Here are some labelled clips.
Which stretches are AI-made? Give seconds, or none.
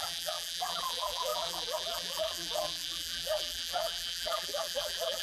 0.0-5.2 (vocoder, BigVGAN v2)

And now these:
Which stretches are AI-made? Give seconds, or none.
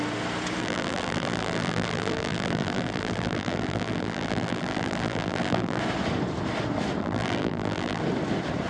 0.6-5.8 (vocoder, BigVGAN v2); 7.0-8.0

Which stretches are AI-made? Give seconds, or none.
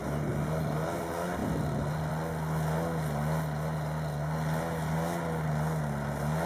none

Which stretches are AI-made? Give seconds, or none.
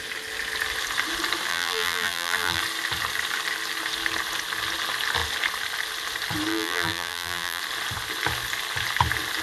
1.5-2.6 (vocoder, BigVGAN v2); 6.5-7.6